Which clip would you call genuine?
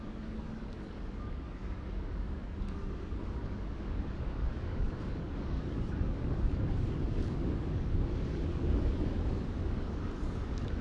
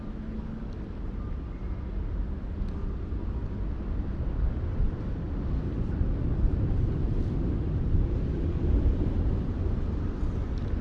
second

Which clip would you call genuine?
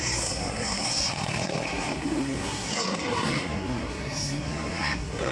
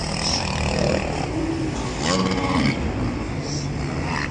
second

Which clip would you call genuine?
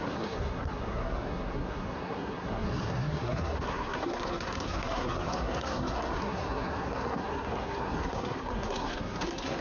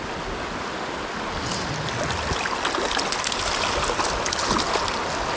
second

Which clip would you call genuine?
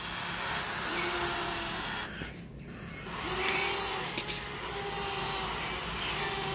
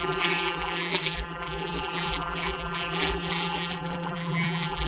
first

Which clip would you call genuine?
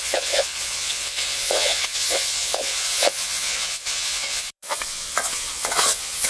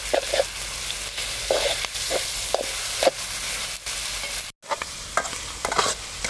second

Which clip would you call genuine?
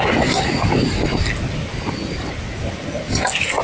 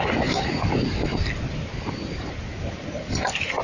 first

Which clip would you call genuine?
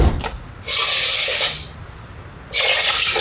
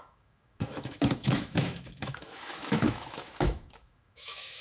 first